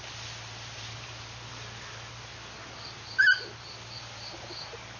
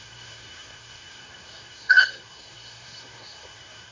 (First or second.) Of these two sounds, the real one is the first